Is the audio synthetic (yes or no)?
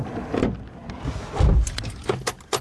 no